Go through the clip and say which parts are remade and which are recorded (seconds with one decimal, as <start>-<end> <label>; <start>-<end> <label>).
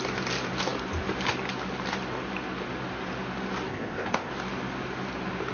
0.0-3.7 recorded; 3.7-4.3 remade; 4.3-5.5 recorded